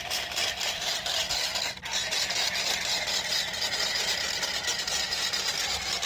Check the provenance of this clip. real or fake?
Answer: real